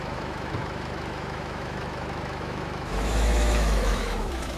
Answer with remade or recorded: remade